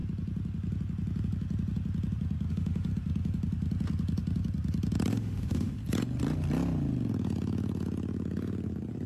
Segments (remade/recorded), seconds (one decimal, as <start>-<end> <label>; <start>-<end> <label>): 0.0-2.5 recorded; 2.5-2.9 remade; 2.9-5.1 recorded; 5.1-5.8 remade; 5.8-9.1 recorded

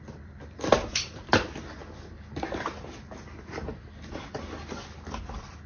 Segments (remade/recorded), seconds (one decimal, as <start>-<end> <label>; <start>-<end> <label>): 0.0-1.8 remade; 1.8-5.2 recorded; 5.2-5.7 remade

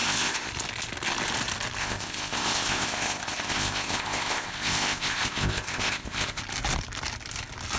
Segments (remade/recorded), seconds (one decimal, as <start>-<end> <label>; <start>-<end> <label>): 0.0-0.5 remade; 0.5-1.8 recorded; 1.8-6.4 remade; 6.4-7.8 recorded

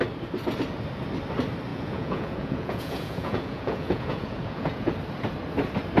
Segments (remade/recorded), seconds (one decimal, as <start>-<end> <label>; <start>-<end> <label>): 0.0-1.7 recorded; 1.7-4.9 remade; 4.9-6.0 recorded

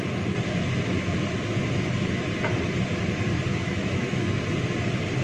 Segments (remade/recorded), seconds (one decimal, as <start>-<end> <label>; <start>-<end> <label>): 0.0-3.5 recorded; 3.5-4.4 remade; 4.4-5.2 recorded

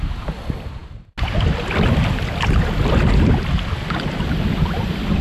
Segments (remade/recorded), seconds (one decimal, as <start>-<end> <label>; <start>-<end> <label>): 0.0-5.2 recorded

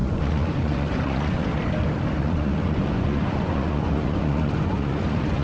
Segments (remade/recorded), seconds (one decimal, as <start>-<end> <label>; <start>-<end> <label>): 0.0-1.5 remade; 1.5-2.2 recorded; 2.2-5.4 remade

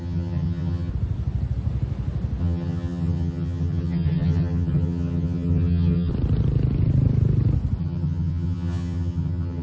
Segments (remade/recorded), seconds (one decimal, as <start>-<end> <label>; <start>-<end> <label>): 0.0-0.9 remade; 0.9-2.4 recorded; 2.4-6.1 remade; 6.1-7.8 recorded; 7.8-9.6 remade